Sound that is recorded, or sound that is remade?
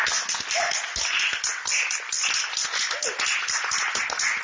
recorded